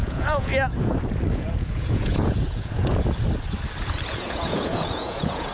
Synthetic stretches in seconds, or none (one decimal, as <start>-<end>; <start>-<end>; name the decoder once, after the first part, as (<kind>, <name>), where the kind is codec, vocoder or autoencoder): 0.0-0.5 (vocoder, Vocos); 1.3-2.9; 4.1-5.5